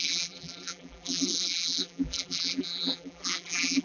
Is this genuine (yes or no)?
no